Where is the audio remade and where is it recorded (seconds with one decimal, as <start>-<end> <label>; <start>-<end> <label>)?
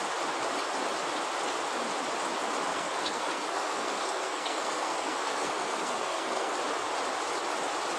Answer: 0.0-2.7 recorded; 2.7-6.6 remade; 6.6-8.0 recorded